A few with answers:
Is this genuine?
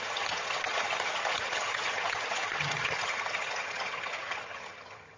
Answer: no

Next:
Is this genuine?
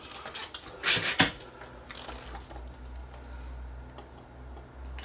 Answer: yes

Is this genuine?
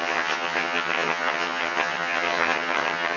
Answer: no